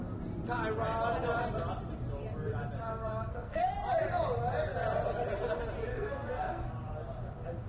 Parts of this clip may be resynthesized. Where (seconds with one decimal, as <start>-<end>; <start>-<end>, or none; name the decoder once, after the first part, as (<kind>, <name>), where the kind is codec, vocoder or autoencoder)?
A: 2.9-3.7 (codec, SNAC); 5.9-6.7